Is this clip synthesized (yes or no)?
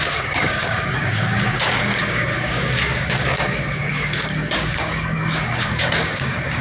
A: yes